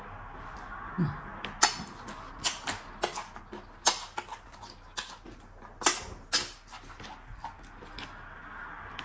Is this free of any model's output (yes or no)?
yes